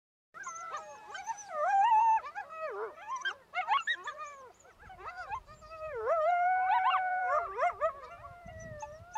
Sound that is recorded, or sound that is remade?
remade